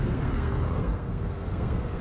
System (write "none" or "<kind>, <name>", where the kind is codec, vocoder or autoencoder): codec, SNAC